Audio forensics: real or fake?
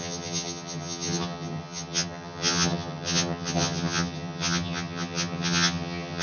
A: fake